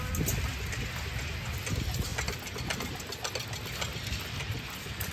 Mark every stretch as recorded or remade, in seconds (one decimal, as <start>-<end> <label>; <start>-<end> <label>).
0.0-5.1 recorded